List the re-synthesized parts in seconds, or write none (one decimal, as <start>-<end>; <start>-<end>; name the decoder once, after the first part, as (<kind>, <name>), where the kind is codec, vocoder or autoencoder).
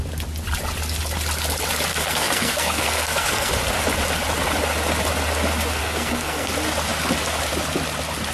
1.9-3.5 (codec, SNAC); 5.8-6.5